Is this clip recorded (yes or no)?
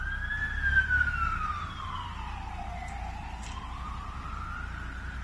yes